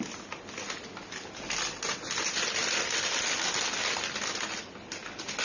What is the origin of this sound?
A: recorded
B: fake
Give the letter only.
A